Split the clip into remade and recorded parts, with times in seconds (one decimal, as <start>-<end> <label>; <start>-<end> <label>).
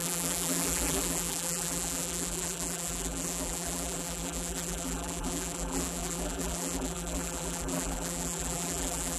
0.0-9.2 remade